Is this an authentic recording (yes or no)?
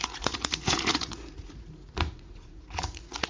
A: no